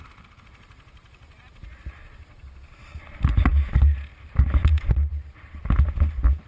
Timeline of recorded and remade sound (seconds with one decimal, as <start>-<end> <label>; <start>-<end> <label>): 0.0-6.5 recorded